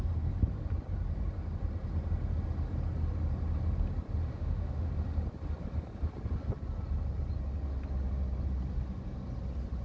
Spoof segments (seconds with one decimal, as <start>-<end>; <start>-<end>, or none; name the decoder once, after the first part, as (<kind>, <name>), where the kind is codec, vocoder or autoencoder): 4.3-4.9 (autoencoder, DAC-VAE)